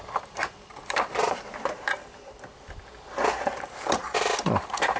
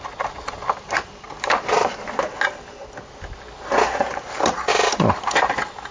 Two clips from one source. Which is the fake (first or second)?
first